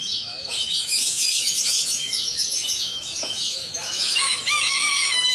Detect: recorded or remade remade